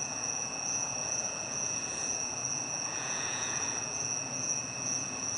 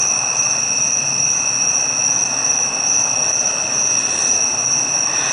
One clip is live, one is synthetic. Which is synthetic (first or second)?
first